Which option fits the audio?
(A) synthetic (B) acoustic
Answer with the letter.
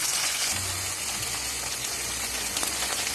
A